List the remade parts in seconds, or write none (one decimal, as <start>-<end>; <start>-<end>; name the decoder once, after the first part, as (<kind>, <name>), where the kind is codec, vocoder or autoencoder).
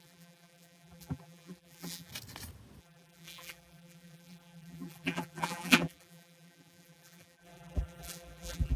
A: 0.0-2.1 (vocoder, BigVGAN v2); 2.8-8.8